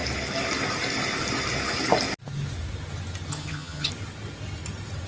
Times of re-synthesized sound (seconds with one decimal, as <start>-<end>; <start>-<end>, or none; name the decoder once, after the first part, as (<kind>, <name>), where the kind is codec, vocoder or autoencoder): 3.3-3.9 (vocoder, HiFi-GAN)